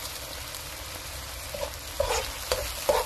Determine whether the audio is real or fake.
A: real